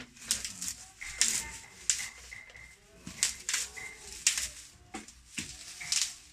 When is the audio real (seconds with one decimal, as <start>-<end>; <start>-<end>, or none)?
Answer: 0.0-6.3